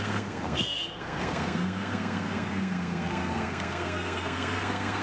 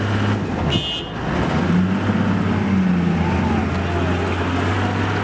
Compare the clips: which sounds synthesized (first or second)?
first